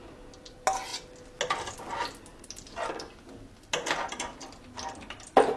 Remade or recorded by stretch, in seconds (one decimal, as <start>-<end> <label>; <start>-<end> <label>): 0.0-5.6 recorded